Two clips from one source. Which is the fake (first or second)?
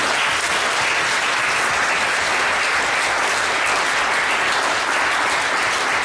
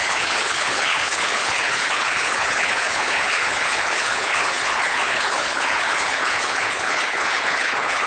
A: second